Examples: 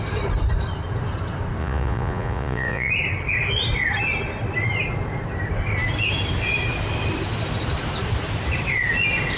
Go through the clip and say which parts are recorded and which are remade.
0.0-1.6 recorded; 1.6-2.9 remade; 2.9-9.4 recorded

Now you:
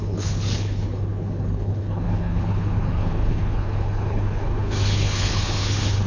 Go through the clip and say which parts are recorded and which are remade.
0.0-6.1 remade